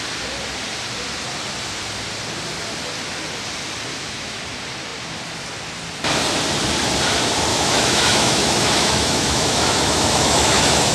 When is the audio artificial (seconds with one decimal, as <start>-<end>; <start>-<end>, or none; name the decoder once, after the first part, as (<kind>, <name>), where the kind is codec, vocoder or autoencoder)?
3.9-4.4 (autoencoder, DAC-VAE); 7.5-10.9